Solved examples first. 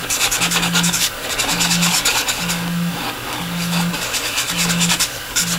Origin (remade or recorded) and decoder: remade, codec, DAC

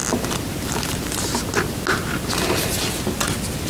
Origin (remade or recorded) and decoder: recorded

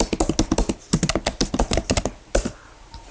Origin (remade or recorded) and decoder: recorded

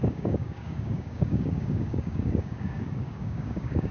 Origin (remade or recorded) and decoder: remade, codec, DAC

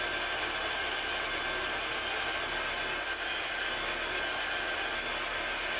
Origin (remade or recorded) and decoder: recorded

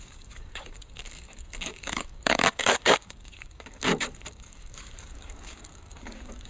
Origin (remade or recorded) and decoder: remade, codec, DAC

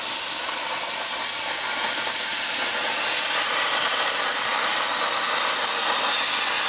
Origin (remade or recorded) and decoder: recorded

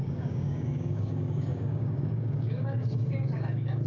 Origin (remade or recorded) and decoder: remade, codec, DAC